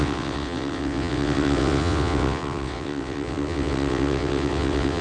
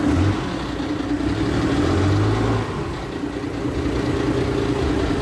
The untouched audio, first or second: second